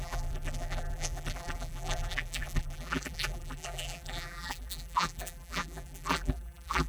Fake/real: fake